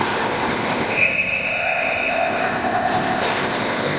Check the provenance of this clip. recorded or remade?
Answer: remade